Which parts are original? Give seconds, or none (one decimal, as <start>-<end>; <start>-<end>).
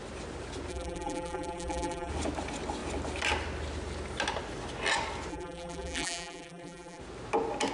0.0-0.7; 2.1-5.3; 7.0-7.7